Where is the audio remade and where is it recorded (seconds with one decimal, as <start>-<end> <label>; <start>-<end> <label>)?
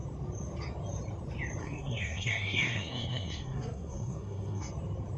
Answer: 0.0-1.6 recorded; 1.6-4.7 remade; 4.7-5.2 recorded